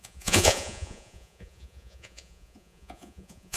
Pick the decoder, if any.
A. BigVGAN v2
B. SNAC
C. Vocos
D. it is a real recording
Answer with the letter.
C